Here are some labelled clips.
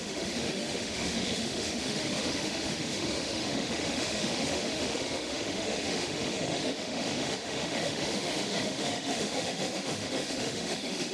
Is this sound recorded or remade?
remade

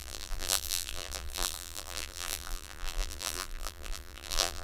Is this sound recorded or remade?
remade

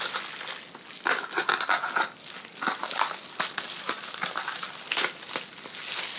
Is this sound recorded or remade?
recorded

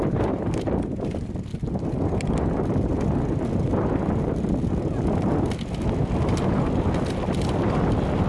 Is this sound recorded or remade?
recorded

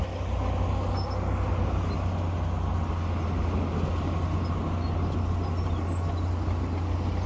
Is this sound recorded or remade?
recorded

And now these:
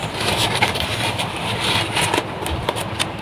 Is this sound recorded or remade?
remade